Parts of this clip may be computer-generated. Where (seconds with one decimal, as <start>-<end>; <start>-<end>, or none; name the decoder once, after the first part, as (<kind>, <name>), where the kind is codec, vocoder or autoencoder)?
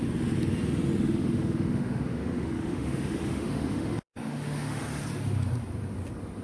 1.0-4.8 (autoencoder, DAC-VAE)